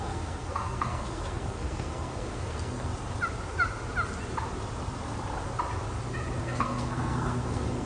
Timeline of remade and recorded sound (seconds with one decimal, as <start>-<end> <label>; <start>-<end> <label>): 0.0-2.9 remade; 2.9-6.4 recorded; 6.4-7.9 remade